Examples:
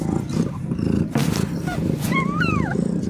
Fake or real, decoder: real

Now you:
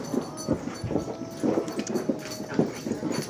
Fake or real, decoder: real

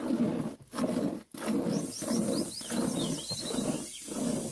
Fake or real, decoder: real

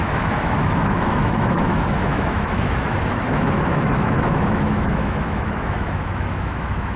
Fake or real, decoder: fake, autoencoder, DAC-VAE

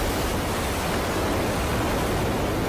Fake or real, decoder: real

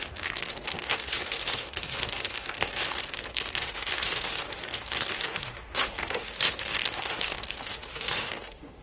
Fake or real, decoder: fake, autoencoder, DAC-VAE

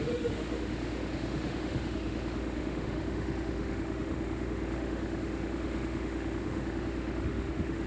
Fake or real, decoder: fake, autoencoder, DAC-VAE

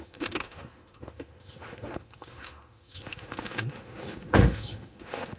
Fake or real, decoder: fake, autoencoder, DAC-VAE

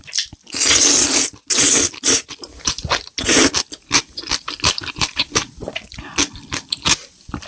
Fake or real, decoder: real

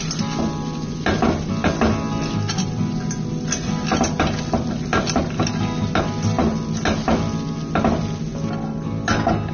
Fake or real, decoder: real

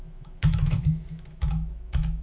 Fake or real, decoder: fake, autoencoder, DAC-VAE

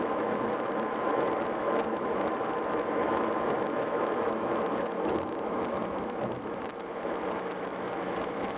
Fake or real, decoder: fake, autoencoder, DAC-VAE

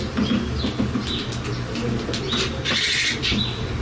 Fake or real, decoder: real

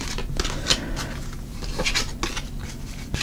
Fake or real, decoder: real